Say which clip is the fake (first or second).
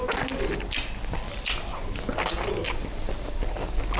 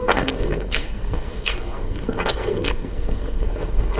second